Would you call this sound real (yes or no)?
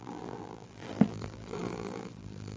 no